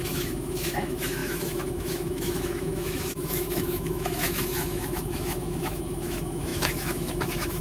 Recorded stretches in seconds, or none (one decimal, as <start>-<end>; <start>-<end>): none